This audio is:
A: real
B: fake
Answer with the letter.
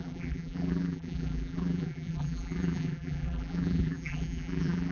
B